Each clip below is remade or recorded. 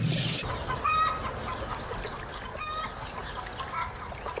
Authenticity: recorded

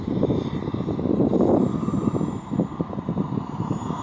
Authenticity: recorded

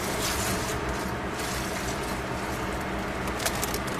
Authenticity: recorded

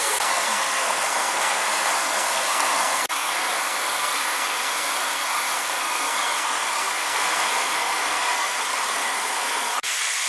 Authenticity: remade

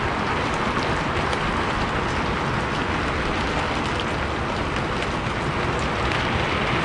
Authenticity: recorded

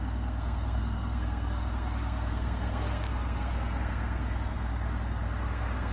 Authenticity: remade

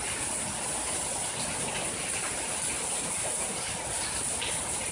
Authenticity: recorded